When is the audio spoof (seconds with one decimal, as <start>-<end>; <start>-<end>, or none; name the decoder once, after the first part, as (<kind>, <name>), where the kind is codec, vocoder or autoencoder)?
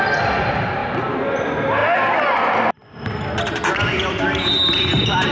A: none